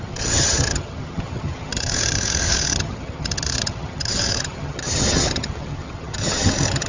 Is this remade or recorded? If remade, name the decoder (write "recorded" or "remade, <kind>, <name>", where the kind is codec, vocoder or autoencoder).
remade, vocoder, HiFi-GAN